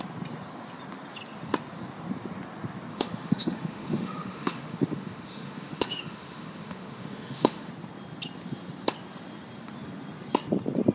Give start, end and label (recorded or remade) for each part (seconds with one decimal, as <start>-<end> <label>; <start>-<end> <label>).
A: 0.0-2.9 recorded; 2.9-7.7 remade; 7.7-10.9 recorded